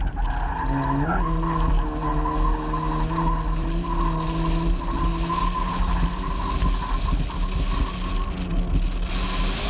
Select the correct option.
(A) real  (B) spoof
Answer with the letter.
A